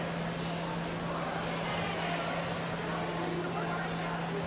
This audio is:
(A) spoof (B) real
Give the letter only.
B